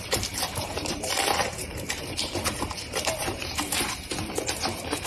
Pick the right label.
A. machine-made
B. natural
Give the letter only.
A